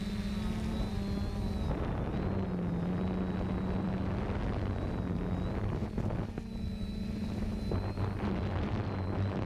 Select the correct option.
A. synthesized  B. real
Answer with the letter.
B